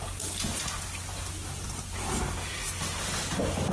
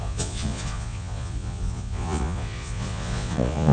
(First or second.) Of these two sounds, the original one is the first